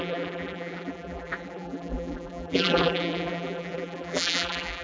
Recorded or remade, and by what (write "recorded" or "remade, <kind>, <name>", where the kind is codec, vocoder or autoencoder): remade, vocoder, BigVGAN v2